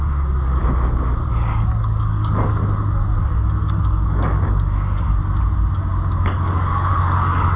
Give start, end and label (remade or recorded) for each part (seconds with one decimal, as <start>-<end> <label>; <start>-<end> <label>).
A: 0.0-0.6 remade; 0.6-1.3 recorded; 1.3-2.6 remade; 2.6-3.3 recorded; 3.3-5.1 remade; 5.1-6.2 recorded; 6.2-7.6 remade